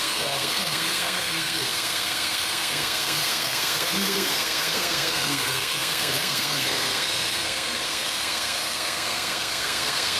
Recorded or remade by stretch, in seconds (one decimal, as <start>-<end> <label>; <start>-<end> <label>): 0.0-10.2 remade